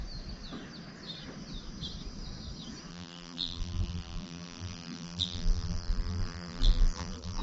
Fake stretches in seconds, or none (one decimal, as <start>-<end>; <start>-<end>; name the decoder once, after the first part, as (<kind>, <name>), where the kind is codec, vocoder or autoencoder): 2.9-7.4 (vocoder, BigVGAN v2)